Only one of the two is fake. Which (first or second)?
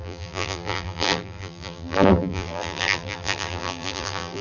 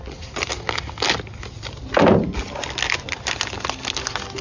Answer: first